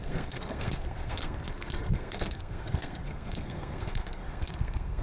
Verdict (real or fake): fake